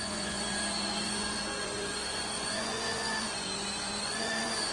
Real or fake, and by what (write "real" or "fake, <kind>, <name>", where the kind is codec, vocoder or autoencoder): fake, vocoder, Vocos